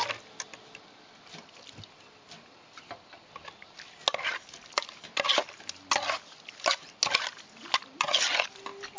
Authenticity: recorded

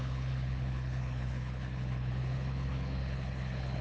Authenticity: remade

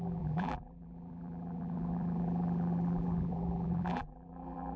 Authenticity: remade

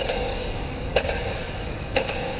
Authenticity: remade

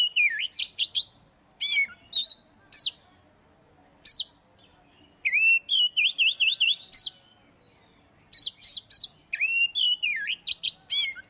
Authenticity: recorded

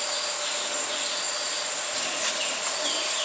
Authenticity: recorded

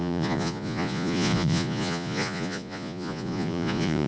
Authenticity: remade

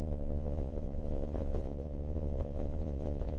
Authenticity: remade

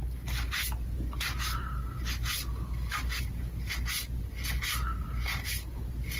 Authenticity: recorded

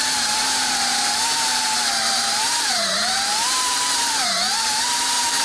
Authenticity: remade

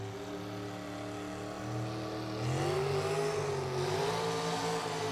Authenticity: recorded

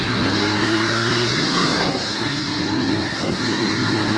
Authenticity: remade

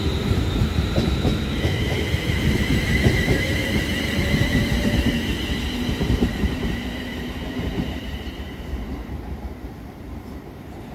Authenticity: remade